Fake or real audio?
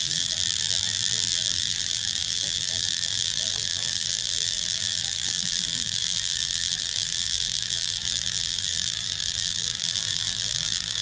fake